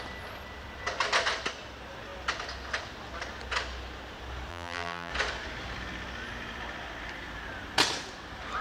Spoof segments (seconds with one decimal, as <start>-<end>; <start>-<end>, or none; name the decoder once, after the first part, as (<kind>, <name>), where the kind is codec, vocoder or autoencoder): 4.5-5.1 (vocoder, BigVGAN v2)